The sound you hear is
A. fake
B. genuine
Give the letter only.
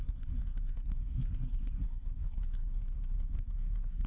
A